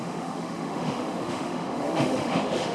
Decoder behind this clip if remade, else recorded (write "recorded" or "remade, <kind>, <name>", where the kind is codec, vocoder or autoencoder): remade, autoencoder, DAC-VAE